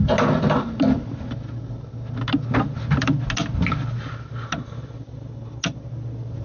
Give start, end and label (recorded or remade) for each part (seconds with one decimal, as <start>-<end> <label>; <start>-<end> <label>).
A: 0.0-6.4 recorded